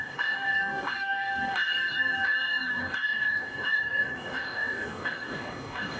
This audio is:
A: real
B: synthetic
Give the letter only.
B